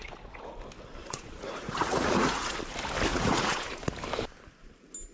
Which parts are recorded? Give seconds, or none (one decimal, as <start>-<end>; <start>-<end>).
0.5-1.0; 2.6-3.1; 3.9-5.1